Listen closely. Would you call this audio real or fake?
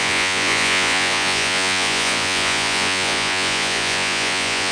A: fake